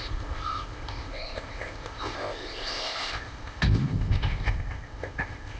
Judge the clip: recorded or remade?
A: remade